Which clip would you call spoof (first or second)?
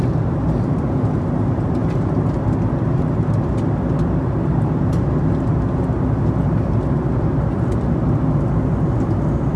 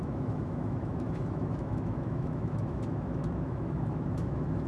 second